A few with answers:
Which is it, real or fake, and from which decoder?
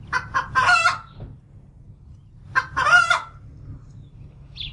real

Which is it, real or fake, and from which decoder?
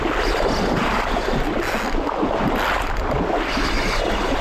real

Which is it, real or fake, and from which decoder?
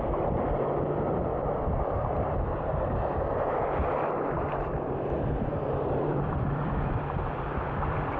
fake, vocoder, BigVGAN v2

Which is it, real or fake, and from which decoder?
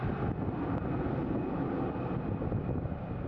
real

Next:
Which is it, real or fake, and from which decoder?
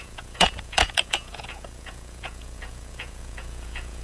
fake, vocoder, Vocos